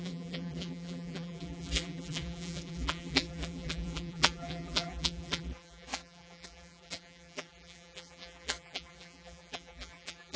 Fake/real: fake